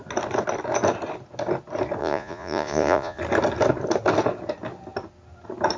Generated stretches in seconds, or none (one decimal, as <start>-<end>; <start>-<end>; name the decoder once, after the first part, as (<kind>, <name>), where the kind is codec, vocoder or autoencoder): 2.0-3.2 (vocoder, Vocos)